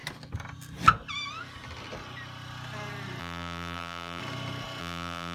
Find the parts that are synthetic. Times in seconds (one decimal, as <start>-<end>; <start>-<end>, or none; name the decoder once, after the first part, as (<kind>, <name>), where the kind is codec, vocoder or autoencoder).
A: 3.2-4.2 (vocoder, BigVGAN v2); 4.8-5.3